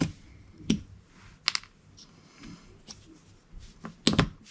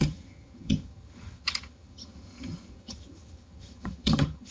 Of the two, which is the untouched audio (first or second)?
first